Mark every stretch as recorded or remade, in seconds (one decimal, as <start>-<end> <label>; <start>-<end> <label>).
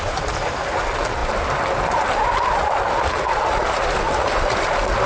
0.0-5.1 recorded